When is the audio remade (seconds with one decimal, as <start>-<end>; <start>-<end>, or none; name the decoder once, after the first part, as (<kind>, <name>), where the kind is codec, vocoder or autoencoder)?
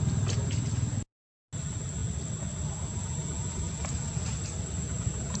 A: none